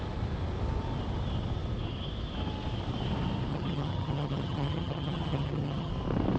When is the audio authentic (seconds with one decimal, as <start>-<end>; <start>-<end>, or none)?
0.0-3.5; 5.9-6.4

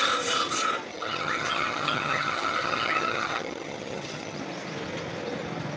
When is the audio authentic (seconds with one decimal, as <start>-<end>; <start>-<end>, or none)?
0.0-0.9; 4.4-5.8